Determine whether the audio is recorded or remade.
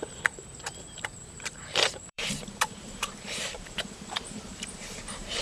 remade